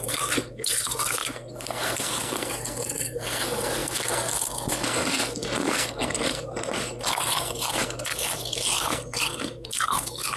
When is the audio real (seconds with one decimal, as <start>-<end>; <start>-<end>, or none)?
none